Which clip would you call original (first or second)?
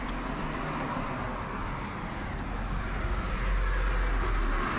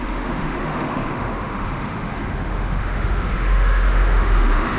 first